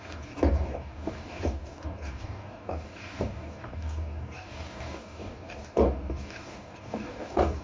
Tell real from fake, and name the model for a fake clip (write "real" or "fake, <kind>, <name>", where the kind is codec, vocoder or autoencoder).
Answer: fake, codec, DAC